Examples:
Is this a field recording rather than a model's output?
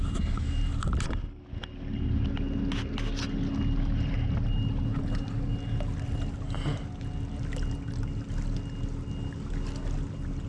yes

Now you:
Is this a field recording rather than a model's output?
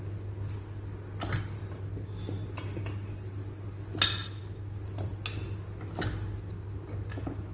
yes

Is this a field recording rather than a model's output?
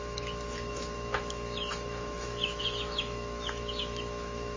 no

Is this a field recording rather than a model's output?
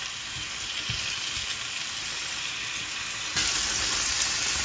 yes